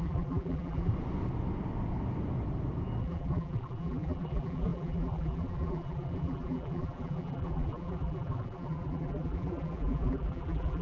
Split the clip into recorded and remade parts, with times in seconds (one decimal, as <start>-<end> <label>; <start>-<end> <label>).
0.0-0.9 remade; 0.9-3.0 recorded; 3.0-10.8 remade